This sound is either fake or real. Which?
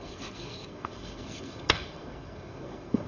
fake